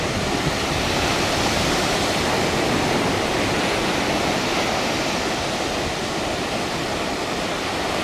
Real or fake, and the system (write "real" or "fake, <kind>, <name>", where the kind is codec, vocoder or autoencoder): real